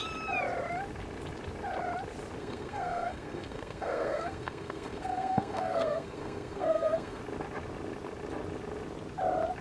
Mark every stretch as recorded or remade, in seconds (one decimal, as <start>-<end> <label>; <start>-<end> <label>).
0.0-2.4 recorded; 2.4-7.2 remade; 7.2-9.6 recorded